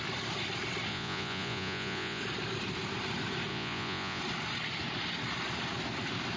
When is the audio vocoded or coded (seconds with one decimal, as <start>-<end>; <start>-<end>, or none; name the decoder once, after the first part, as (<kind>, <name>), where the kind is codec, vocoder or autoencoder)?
0.9-2.2 (vocoder, Vocos); 3.5-4.2